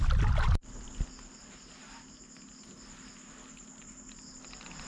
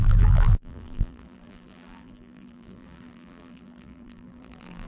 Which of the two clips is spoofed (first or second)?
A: second